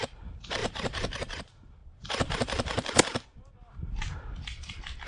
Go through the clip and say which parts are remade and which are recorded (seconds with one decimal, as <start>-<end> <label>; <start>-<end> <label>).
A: 0.0-0.6 recorded; 0.6-1.4 remade; 1.4-1.8 recorded; 1.8-3.5 remade; 3.5-5.1 recorded